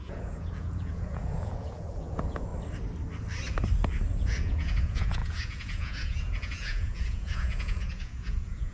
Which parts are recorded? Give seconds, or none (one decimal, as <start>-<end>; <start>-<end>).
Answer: 2.5-4.1